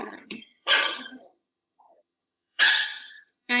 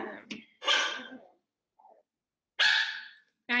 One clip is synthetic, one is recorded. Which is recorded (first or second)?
second